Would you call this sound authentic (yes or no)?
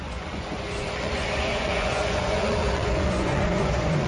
no